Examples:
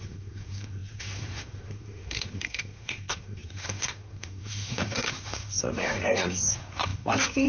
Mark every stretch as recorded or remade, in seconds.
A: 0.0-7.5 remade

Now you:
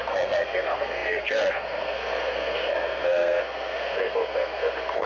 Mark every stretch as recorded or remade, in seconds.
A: 0.0-5.1 remade